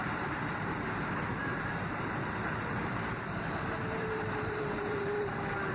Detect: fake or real fake